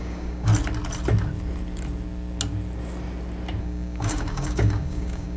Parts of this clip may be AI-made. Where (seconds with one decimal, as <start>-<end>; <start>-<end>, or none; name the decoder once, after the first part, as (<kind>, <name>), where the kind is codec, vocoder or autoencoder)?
0.0-0.5 (codec, DAC); 3.6-5.4